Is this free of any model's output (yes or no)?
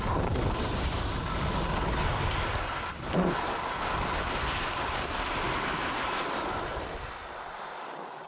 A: yes